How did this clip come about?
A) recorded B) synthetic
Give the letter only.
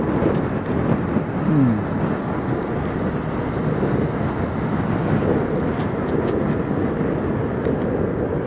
A